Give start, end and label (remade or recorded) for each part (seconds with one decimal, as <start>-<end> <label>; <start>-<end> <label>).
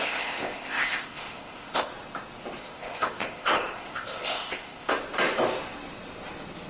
0.0-1.9 remade; 1.9-2.6 recorded; 2.6-4.9 remade; 4.9-6.7 recorded